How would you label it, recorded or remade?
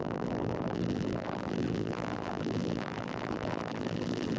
remade